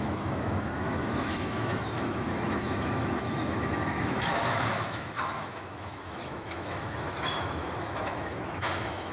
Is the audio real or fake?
fake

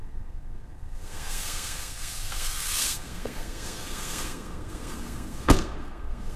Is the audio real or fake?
fake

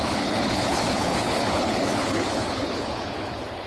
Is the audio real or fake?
fake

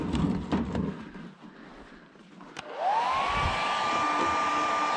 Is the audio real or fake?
real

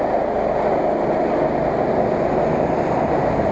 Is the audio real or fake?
real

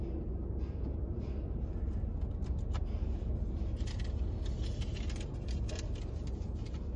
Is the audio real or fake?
real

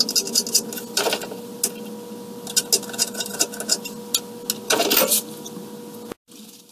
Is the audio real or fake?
real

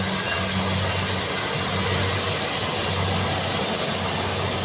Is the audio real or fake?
real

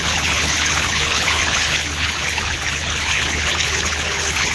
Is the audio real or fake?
fake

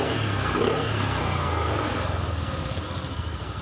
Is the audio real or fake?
fake